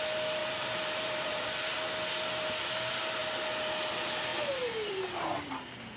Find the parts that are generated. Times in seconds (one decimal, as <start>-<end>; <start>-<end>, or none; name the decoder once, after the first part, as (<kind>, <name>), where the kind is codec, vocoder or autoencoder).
0.4-1.5 (vocoder, BigVGAN v2); 4.3-5.5